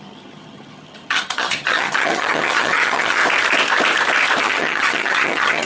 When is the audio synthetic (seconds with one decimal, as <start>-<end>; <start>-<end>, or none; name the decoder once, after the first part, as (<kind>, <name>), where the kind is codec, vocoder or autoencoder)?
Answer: 0.0-3.2 (vocoder, HiFi-GAN); 4.4-5.6